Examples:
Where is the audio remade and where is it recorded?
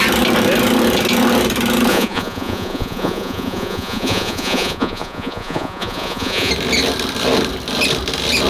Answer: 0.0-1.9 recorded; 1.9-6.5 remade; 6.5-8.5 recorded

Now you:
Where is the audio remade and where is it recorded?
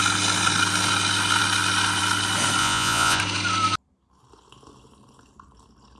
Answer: 0.0-2.6 recorded; 2.6-3.2 remade; 3.2-6.0 recorded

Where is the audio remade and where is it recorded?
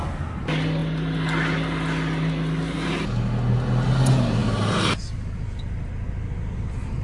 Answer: 0.0-7.0 recorded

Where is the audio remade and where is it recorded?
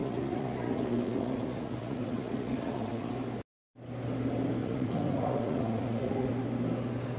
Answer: 0.0-3.1 remade; 3.1-4.6 recorded; 4.6-6.3 remade; 6.3-7.2 recorded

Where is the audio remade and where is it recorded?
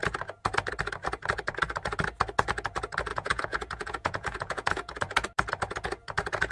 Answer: 0.0-3.1 recorded; 3.1-5.0 remade; 5.0-6.5 recorded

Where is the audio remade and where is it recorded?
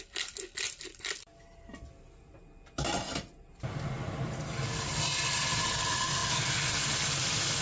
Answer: 0.0-7.6 recorded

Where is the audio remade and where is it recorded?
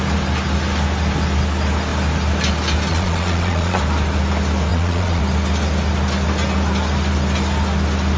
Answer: 0.0-2.9 recorded; 2.9-3.8 remade; 3.8-4.7 recorded; 4.7-5.2 remade; 5.2-8.2 recorded